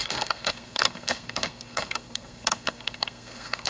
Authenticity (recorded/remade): remade